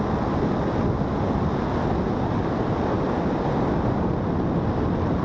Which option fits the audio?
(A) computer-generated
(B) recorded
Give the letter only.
B